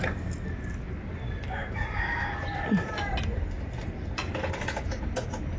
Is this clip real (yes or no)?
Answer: yes